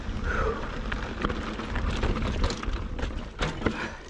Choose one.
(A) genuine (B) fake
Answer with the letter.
A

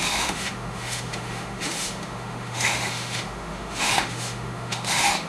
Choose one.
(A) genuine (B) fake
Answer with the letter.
B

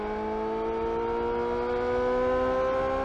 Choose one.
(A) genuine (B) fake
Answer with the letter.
A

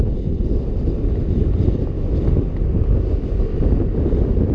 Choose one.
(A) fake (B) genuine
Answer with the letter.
B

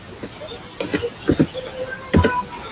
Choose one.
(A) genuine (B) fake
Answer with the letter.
A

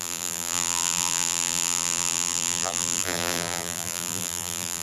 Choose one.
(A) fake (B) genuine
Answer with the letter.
A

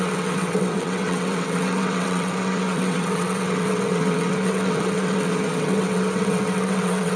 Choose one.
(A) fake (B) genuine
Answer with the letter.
A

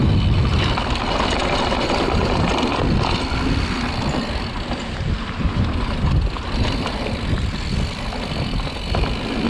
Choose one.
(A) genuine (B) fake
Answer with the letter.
A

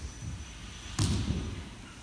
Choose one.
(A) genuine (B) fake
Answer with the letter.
A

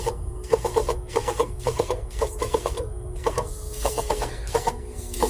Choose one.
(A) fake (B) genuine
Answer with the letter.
A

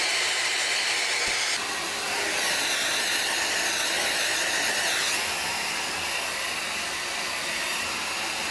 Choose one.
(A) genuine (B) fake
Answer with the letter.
A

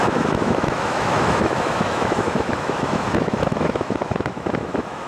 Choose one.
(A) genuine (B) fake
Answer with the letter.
B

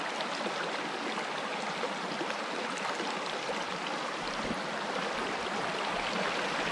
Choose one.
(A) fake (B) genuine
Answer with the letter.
B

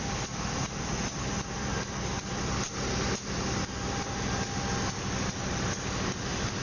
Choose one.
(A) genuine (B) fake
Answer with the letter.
A